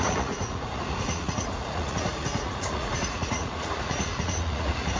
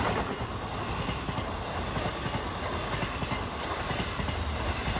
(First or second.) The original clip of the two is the second